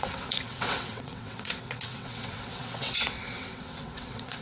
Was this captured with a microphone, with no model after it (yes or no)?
no